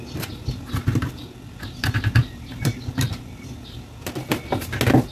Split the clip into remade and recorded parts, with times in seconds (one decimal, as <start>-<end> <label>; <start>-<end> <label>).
0.0-1.2 recorded; 1.2-4.2 remade; 4.2-5.1 recorded